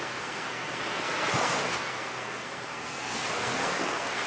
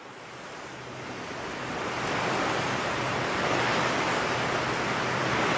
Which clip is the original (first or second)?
second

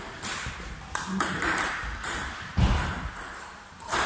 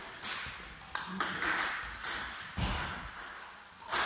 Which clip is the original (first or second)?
second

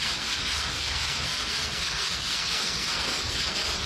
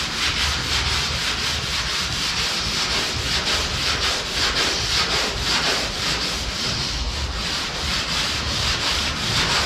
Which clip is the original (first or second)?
second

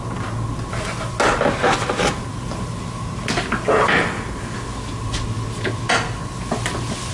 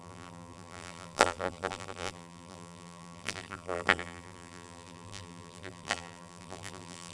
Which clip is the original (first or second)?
first